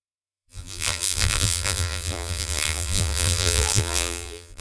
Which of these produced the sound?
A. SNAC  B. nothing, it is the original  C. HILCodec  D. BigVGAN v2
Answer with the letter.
D